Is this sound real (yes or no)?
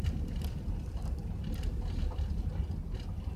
yes